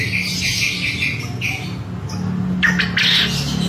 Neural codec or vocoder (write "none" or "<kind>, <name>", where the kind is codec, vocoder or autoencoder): none